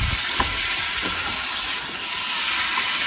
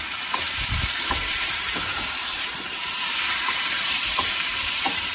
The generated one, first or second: second